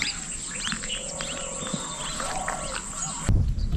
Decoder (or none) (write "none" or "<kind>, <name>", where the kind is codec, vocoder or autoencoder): none